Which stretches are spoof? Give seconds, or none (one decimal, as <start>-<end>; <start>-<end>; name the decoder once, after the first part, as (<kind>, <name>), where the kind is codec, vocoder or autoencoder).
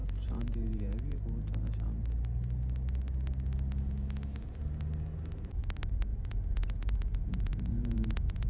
0.0-1.2 (vocoder, Vocos); 6.1-8.5